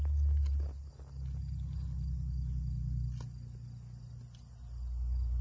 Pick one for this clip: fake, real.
real